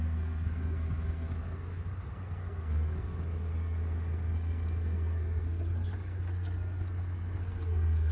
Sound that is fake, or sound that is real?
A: fake